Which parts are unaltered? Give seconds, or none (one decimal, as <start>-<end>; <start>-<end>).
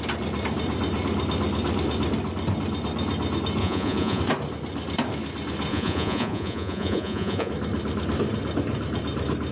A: 0.0-3.6; 4.2-5.7; 7.5-9.5